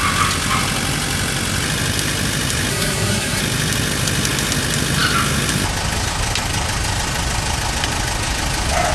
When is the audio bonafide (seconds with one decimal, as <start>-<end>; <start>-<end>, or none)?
0.0-2.7; 3.4-8.9